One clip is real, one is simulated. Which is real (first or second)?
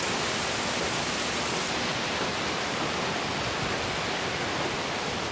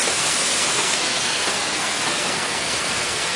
first